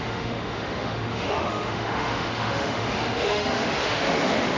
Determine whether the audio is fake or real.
fake